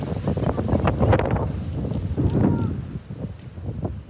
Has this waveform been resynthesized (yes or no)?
no